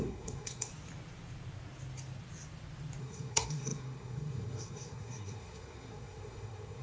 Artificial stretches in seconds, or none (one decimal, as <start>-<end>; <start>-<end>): 0.0-0.7; 3.0-6.8